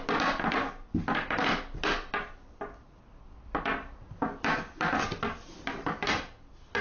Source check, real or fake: real